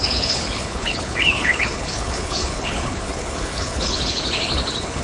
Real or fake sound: fake